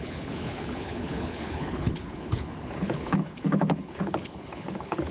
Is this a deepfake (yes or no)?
yes